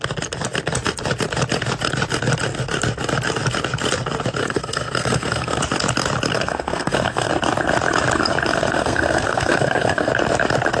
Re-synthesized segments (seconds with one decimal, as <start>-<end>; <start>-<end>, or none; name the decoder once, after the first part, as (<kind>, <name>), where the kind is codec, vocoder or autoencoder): 4.4-5.6 (codec, SNAC); 6.3-7.3; 8.5-10.1